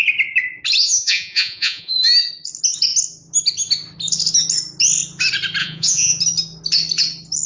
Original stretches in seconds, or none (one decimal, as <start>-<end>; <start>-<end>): 0.0-0.8; 1.9-5.6; 6.2-7.5